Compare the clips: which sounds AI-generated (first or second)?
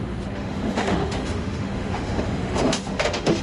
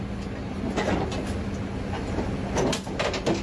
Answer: first